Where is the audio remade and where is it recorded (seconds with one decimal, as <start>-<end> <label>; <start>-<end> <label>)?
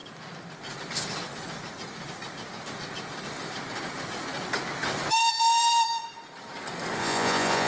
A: 0.0-7.0 recorded; 7.0-7.7 remade